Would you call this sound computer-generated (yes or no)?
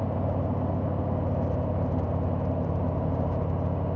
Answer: no